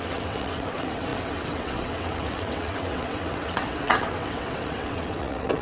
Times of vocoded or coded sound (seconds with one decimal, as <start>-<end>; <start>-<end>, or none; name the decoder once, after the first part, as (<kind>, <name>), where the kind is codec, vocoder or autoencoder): 0.0-5.6 (vocoder, WaveNeXt)